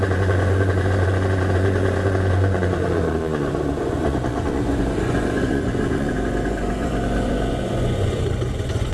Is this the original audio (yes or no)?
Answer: no